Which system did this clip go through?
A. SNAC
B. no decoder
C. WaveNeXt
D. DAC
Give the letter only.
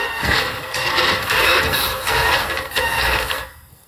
A